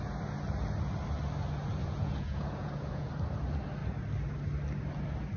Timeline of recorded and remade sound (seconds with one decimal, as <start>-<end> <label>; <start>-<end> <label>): 0.0-1.8 recorded; 1.8-3.1 remade; 3.1-5.4 recorded